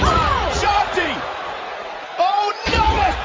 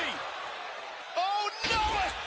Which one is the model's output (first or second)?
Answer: first